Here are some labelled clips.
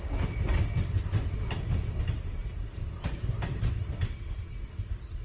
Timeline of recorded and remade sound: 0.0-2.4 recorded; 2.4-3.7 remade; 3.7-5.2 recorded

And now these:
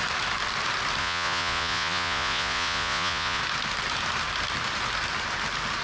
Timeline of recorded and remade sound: 0.0-1.0 recorded; 1.0-3.4 remade; 3.4-5.8 recorded